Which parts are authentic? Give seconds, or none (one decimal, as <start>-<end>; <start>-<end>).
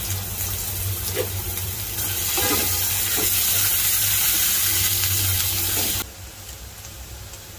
0.0-1.5; 2.4-7.6